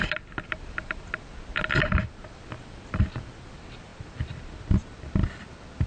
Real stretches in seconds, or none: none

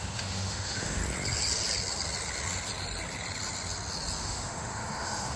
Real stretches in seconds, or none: 1.0-4.2